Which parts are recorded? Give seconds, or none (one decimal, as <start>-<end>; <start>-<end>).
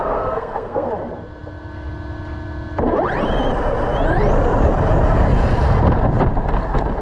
0.9-7.0